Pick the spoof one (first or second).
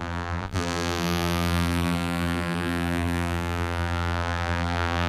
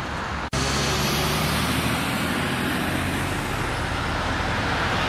first